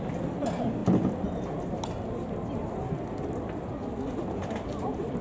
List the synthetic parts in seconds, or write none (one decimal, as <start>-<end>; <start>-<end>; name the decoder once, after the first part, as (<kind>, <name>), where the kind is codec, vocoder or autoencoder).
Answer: none